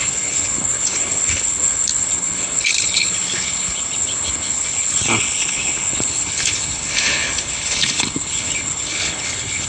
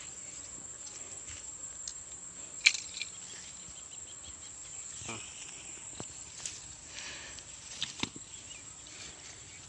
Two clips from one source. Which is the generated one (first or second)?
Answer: first